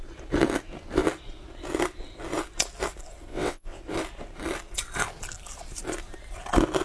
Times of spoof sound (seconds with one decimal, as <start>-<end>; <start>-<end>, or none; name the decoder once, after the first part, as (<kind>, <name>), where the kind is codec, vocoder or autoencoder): 3.3-3.8 (vocoder, WaveNeXt)